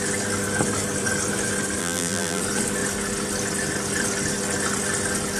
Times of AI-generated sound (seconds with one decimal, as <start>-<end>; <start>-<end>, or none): 1.8-2.4